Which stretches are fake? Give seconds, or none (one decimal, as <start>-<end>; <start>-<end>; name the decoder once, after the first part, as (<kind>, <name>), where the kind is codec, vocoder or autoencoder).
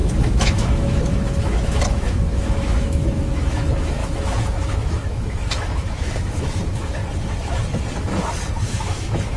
0.0-7.0 (autoencoder, DAC-VAE); 8.6-9.4